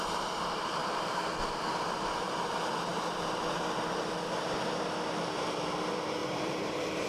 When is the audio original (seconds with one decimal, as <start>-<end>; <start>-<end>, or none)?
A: 0.0-0.8; 1.4-6.2